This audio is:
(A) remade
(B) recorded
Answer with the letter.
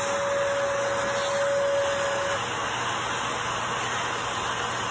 B